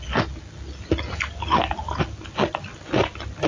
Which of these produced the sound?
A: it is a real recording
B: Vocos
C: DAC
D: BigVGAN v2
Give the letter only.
A